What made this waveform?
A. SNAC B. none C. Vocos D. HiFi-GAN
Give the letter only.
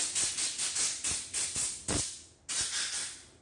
B